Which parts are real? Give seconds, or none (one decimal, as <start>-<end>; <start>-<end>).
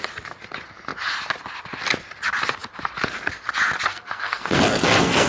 0.0-3.9